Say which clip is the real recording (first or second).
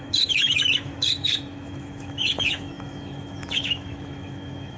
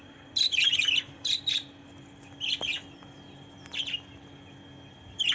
second